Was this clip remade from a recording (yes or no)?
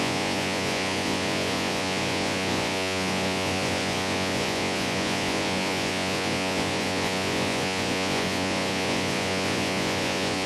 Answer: yes